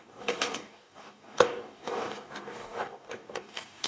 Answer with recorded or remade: remade